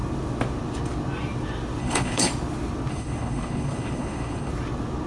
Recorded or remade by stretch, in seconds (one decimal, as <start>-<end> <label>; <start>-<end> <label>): 0.0-1.8 recorded; 1.8-2.3 remade; 2.3-2.9 recorded; 2.9-4.5 remade; 4.5-5.1 recorded